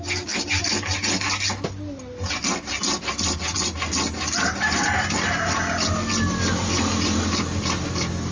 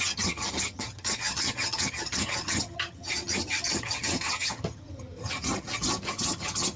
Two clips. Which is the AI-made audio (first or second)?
second